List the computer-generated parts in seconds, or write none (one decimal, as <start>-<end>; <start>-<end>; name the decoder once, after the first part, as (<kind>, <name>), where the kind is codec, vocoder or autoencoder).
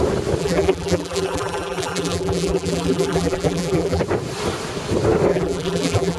0.4-4.0 (vocoder, BigVGAN v2); 5.3-6.2